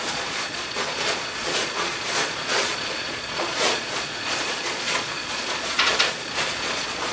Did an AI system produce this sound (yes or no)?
yes